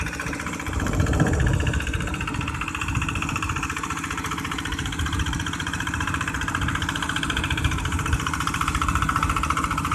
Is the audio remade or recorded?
remade